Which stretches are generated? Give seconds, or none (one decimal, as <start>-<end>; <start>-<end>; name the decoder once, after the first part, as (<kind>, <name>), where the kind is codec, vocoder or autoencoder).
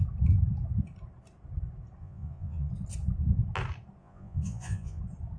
2.0-2.7 (vocoder, Vocos); 4.0-5.0